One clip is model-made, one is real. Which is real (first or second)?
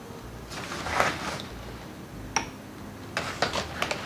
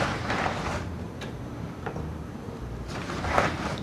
first